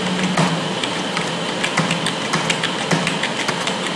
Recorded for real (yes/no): yes